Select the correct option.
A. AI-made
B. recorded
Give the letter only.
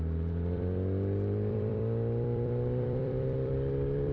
A